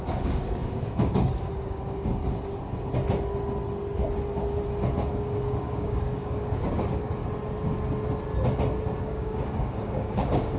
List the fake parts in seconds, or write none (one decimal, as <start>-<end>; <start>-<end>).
0.0-2.2; 5.1-7.2; 9.0-10.6